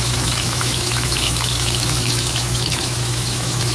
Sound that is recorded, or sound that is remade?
remade